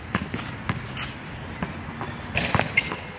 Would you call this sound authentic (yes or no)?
yes